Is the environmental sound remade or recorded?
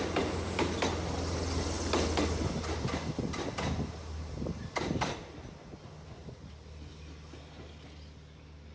recorded